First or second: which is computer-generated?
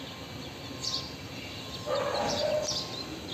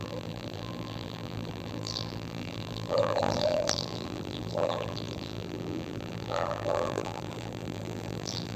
second